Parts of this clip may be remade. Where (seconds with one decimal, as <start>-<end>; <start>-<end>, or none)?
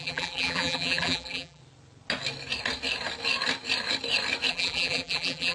0.0-1.6; 4.5-5.5